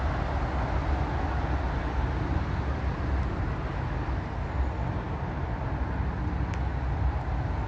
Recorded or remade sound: recorded